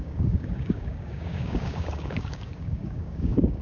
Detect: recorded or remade remade